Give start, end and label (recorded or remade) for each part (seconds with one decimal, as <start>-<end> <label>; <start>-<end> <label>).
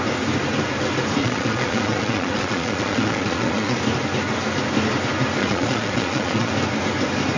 0.0-1.2 recorded; 1.2-3.8 remade; 3.8-5.4 recorded; 5.4-6.5 remade; 6.5-7.4 recorded